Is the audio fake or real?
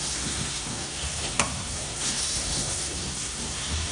fake